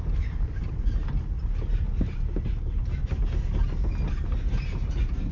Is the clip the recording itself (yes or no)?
yes